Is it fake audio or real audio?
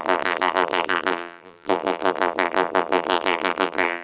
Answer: fake